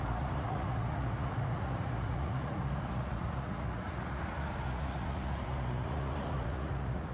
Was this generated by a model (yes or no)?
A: yes